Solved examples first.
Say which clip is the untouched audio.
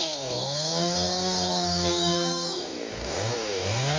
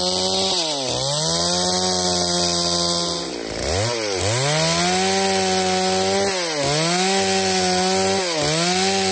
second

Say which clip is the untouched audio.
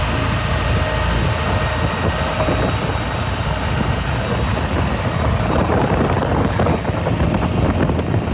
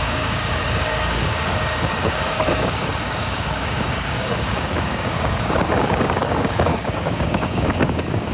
first